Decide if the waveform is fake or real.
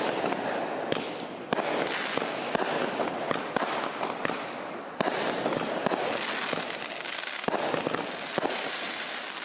real